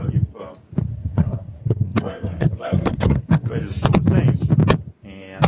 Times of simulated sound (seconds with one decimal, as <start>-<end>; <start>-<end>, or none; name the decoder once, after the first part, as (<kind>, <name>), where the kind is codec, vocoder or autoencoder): 0.9-3.5 (codec, SNAC)